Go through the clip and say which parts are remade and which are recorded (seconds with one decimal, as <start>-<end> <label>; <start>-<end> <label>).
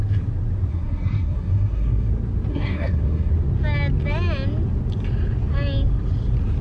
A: 0.0-0.7 recorded; 0.7-2.1 remade; 2.1-2.5 recorded; 2.5-3.3 remade; 3.3-6.6 recorded